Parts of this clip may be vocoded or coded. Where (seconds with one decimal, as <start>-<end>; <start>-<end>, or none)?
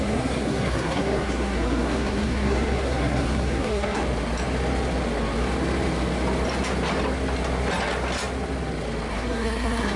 0.0-4.0; 9.1-10.0